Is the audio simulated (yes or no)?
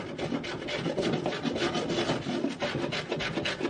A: no